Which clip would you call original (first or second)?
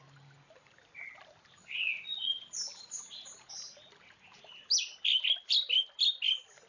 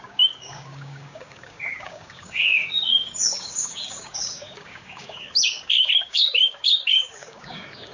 first